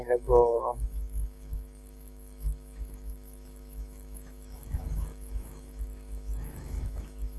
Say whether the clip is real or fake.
fake